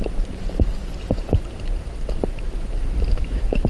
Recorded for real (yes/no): no